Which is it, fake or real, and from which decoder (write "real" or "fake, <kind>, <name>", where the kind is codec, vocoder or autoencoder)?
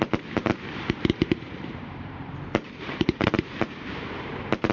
fake, vocoder, BigVGAN v2